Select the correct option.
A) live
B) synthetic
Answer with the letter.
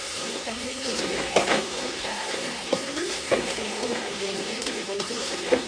B